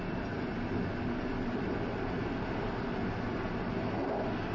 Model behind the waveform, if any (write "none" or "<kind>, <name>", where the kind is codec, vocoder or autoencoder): none